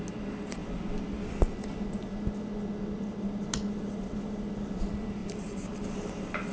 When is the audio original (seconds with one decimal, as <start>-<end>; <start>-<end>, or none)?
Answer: 0.0-5.2; 6.1-6.5